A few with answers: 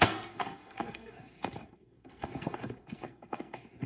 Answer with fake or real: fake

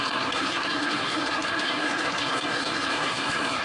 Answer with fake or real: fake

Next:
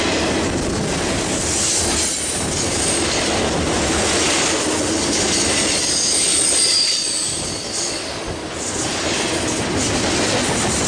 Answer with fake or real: real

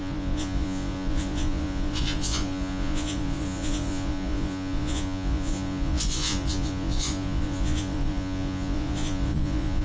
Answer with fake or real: fake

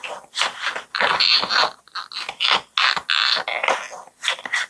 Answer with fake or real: real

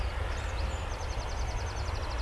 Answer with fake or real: real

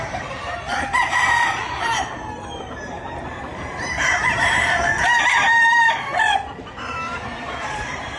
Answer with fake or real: fake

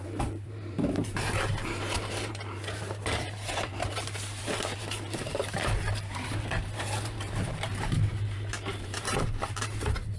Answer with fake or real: fake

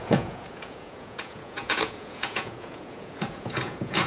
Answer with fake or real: fake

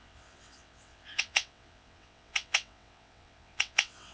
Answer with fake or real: fake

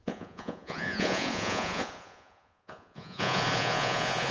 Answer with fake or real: fake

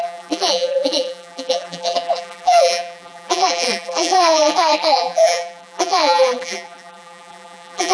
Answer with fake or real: fake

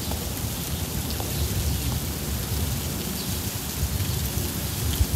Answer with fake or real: real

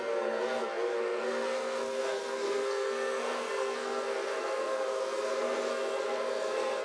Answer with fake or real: fake